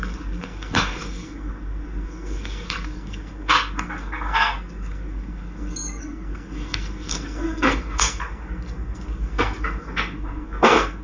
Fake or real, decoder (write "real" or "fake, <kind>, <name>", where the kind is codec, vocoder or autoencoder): fake, codec, SNAC